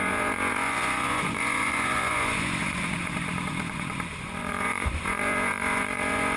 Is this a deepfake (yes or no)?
yes